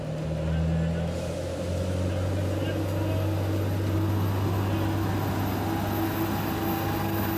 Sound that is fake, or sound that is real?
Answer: real